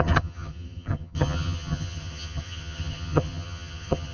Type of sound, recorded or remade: remade